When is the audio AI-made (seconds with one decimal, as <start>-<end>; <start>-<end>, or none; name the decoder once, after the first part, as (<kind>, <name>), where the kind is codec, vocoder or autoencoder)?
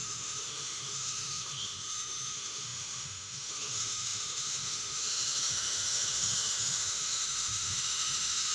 0.0-8.5 (autoencoder, DAC-VAE)